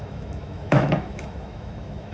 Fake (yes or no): yes